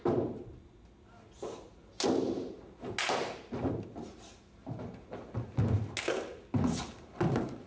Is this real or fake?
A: real